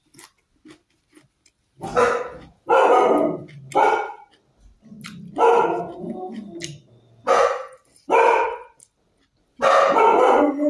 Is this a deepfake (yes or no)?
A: no